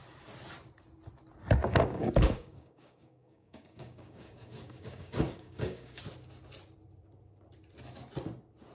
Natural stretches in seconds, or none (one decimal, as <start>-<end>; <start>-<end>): 0.0-1.6; 6.0-8.7